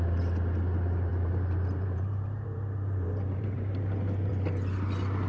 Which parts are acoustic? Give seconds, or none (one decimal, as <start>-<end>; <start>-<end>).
0.0-1.1; 4.3-5.3